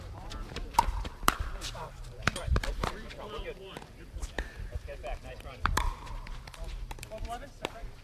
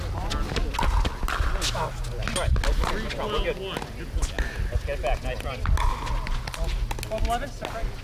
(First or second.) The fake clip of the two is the first